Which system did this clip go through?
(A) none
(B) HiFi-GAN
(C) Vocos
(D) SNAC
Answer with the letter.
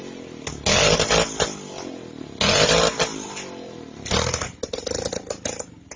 A